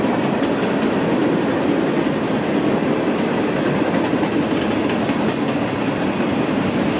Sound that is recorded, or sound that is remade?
recorded